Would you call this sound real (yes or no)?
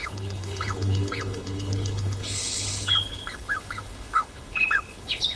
no